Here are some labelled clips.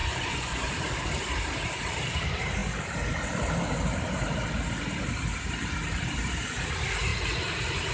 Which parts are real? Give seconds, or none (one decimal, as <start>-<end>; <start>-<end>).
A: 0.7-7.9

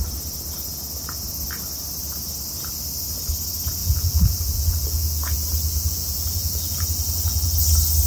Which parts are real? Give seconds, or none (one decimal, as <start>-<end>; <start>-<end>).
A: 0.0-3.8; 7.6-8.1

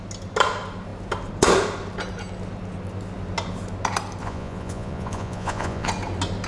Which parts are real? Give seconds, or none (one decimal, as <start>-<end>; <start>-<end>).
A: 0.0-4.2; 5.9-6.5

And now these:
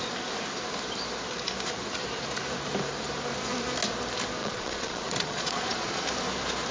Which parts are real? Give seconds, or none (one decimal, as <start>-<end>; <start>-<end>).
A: 0.0-4.4; 6.0-6.7

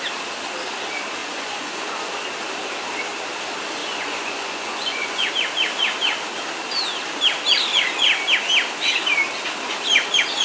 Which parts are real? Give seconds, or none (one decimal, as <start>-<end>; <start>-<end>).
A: 0.0-1.2; 2.1-3.8; 5.3-10.4

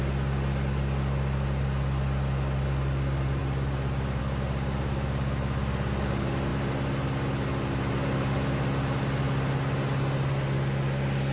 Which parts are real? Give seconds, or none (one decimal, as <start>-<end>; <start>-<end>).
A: 0.0-11.3

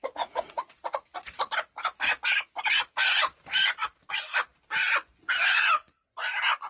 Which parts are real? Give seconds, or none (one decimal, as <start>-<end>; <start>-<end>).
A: 1.5-5.4; 5.9-6.7

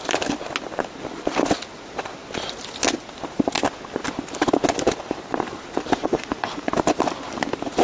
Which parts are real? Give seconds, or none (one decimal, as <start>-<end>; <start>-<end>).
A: 0.0-6.0; 6.7-7.8